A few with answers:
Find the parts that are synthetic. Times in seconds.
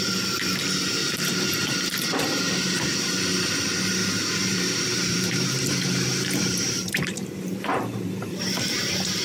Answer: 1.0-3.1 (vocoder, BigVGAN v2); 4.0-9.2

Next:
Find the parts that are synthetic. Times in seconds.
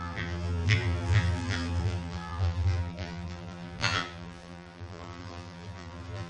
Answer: 0.0-6.3 (vocoder, BigVGAN v2)